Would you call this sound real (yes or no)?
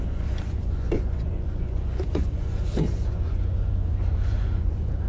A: no